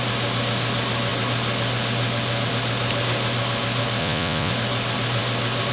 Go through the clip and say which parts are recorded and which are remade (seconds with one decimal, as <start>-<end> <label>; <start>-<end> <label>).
0.0-4.0 recorded; 4.0-4.5 remade; 4.5-5.7 recorded